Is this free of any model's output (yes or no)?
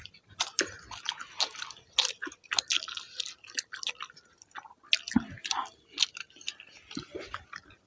yes